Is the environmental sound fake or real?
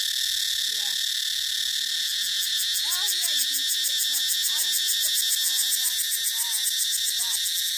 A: real